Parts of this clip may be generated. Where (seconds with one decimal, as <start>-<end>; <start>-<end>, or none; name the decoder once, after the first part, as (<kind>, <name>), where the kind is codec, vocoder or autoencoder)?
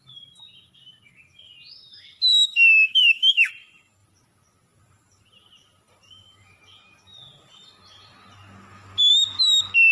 2.3-3.5 (autoencoder, DAC-VAE)